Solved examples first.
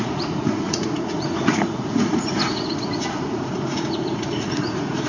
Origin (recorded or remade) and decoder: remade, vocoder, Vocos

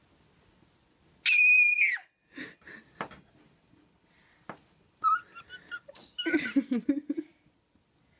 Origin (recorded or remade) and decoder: recorded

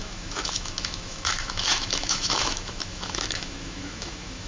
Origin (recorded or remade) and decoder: remade, autoencoder, DAC-VAE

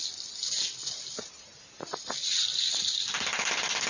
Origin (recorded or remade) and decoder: recorded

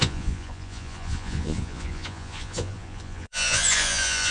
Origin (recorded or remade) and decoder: remade, vocoder, Vocos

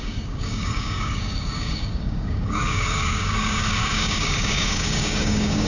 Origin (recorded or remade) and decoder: remade, codec, DAC